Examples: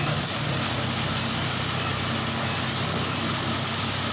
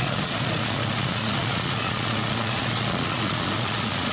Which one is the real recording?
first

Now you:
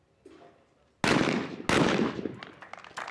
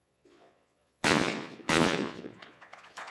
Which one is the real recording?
first